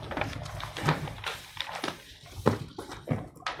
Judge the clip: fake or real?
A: real